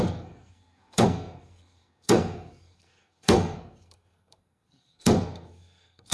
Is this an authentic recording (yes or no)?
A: no